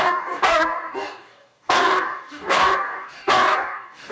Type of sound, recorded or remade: remade